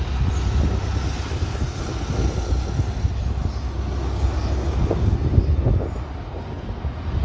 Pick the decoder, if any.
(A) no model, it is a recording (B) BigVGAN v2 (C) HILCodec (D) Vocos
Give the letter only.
A